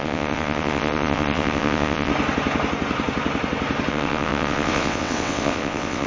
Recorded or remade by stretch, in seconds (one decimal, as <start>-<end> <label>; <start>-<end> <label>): 0.0-2.1 remade; 2.1-3.9 recorded; 3.9-6.1 remade

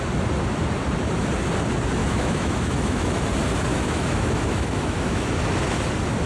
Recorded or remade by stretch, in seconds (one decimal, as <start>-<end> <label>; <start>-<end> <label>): 0.0-2.0 recorded; 2.0-3.3 remade; 3.3-3.7 recorded; 3.7-5.3 remade; 5.3-6.3 recorded

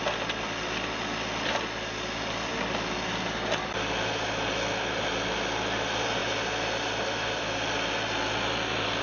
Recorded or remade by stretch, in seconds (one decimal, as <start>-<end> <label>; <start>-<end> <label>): 0.0-9.0 recorded

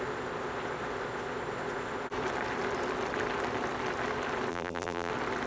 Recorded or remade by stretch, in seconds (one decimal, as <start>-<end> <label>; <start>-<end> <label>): 0.0-4.5 recorded; 4.5-5.1 remade; 5.1-5.5 recorded

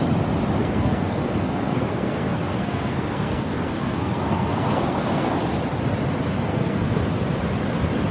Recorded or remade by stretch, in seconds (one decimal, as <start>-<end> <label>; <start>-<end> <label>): 0.0-0.6 recorded; 0.6-5.3 remade; 5.3-6.5 recorded; 6.5-7.0 remade; 7.0-8.1 recorded